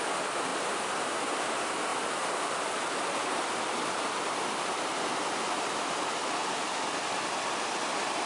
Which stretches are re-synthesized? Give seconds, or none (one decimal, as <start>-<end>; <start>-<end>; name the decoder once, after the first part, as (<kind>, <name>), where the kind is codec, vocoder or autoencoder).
none